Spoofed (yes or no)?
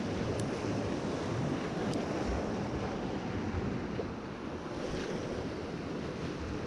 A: no